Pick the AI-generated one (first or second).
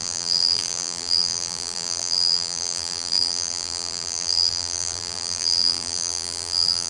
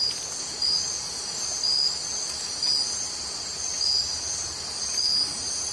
first